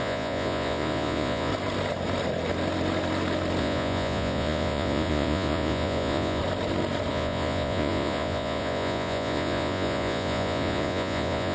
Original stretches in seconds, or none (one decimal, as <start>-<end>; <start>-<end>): 1.5-3.6; 6.4-7.1